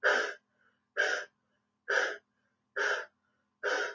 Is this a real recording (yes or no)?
yes